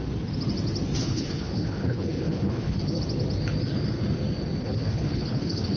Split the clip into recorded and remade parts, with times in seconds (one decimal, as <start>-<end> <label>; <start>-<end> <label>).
0.0-1.0 recorded; 1.0-3.0 remade; 3.0-4.6 recorded; 4.6-5.8 remade